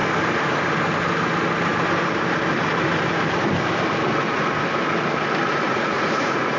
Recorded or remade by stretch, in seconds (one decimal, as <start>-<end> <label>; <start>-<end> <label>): 0.0-5.7 recorded; 5.7-6.6 remade